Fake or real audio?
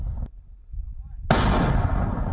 real